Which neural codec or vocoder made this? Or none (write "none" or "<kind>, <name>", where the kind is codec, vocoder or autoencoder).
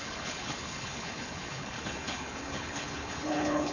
codec, HILCodec